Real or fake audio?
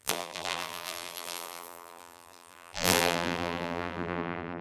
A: fake